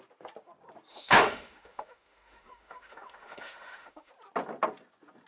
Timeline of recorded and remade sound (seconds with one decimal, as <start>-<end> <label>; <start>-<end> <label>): 0.0-0.9 recorded; 0.9-4.1 remade; 4.1-5.3 recorded

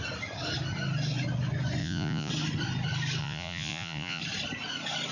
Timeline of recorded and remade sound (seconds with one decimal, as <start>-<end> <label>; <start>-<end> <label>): 0.0-1.8 recorded; 1.8-2.3 remade; 2.3-3.2 recorded; 3.2-4.2 remade; 4.2-5.1 recorded

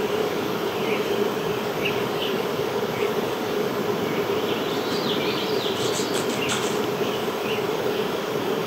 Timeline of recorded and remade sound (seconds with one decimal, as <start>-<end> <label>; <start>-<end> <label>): 0.0-3.8 remade; 3.8-7.0 recorded; 7.0-8.7 remade

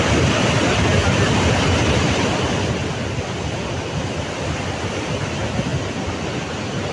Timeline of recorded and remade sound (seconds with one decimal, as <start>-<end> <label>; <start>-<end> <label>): 0.0-6.9 recorded

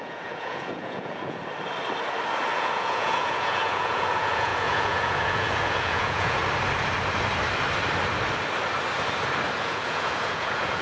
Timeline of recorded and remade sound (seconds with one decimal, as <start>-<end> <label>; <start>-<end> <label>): 0.0-1.4 remade; 1.4-2.5 recorded; 2.5-6.4 remade; 6.4-9.6 recorded; 9.6-10.8 remade

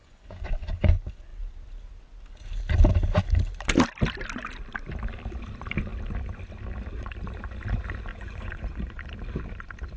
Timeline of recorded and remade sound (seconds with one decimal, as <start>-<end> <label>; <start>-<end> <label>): 0.0-0.9 remade; 0.9-8.1 recorded; 8.1-9.0 remade; 9.0-10.0 recorded